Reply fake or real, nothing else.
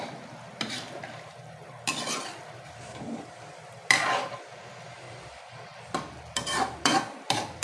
fake